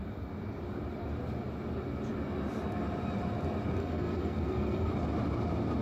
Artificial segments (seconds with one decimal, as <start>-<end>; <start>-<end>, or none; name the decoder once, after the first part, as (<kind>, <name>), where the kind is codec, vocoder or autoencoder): 3.8-4.9 (codec, SNAC)